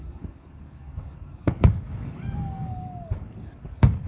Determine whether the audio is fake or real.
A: fake